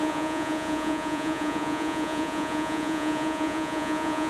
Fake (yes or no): yes